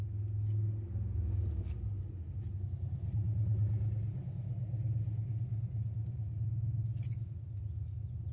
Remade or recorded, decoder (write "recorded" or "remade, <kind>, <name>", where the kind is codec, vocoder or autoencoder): recorded